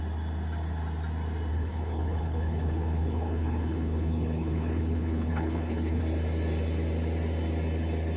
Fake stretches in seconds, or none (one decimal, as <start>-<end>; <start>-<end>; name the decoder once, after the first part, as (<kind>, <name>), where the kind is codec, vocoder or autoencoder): 1.5-6.0 (codec, HILCodec)